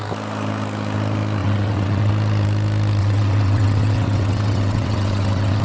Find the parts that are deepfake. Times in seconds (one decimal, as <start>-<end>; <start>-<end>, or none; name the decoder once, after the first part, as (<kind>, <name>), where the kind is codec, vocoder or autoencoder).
1.4-2.1 (vocoder, WaveNeXt); 3.0-5.6